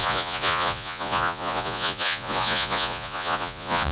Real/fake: fake